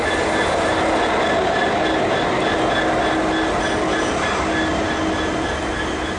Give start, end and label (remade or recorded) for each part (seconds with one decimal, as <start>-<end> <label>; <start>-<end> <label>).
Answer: 0.0-6.2 recorded